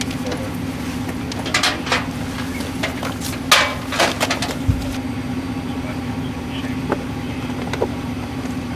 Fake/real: real